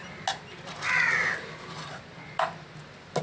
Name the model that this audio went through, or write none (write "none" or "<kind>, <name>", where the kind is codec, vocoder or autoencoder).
none